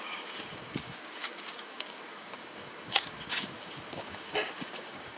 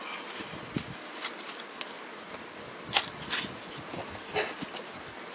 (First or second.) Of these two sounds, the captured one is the second